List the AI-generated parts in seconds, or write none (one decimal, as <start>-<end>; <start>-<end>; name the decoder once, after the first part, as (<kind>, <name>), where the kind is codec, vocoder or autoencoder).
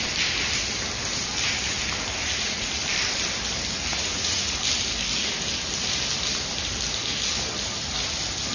2.2-2.7 (vocoder, Vocos); 3.9-4.6